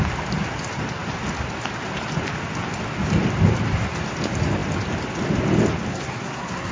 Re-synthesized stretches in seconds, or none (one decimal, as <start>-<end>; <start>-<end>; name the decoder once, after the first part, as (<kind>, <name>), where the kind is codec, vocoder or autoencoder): 5.9-6.7 (codec, SNAC)